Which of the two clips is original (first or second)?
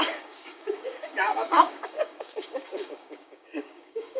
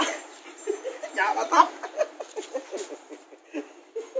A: second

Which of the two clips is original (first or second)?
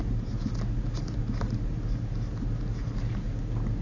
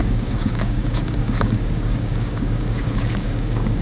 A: first